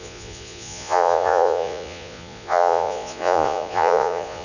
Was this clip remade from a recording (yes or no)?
yes